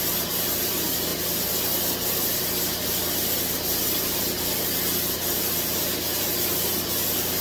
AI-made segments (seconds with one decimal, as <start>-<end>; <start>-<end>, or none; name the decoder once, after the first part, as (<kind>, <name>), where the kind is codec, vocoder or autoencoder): none

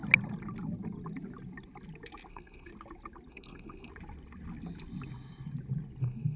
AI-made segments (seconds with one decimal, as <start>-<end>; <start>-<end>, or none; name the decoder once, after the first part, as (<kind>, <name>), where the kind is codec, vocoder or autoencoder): 2.3-2.7 (codec, SNAC); 3.3-3.9; 6.0-6.4

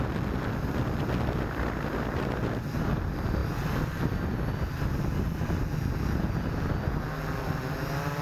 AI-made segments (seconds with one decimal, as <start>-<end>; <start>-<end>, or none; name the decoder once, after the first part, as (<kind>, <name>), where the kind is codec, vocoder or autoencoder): none

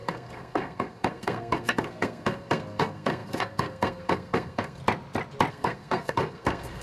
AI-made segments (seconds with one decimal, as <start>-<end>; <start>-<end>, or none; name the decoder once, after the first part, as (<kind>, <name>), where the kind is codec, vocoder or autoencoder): 0.0-4.8 (codec, SNAC); 5.5-6.8

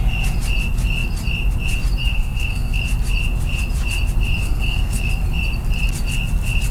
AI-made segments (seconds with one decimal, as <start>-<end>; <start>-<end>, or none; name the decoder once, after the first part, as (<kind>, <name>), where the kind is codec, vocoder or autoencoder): 2.0-2.8 (codec, SNAC); 4.4-5.1

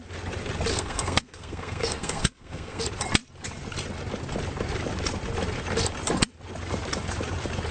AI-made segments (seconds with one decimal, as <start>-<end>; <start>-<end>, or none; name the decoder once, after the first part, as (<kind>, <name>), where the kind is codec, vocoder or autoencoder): 0.7-2.8 (codec, SNAC)

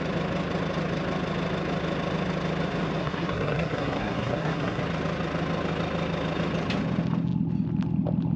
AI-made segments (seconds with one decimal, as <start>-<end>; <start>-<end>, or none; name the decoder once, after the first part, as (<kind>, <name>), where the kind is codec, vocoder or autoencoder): 3.0-4.8 (codec, SNAC)